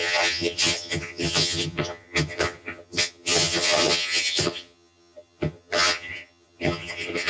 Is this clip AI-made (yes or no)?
yes